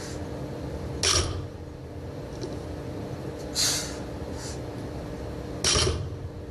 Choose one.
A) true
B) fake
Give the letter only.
A